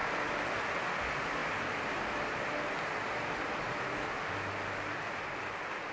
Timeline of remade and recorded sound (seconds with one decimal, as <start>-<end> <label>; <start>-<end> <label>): 0.0-5.9 recorded